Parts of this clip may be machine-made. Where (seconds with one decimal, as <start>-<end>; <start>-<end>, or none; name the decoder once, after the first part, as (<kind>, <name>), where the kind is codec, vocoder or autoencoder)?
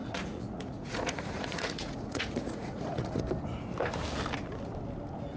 0.0-3.2 (vocoder, Vocos)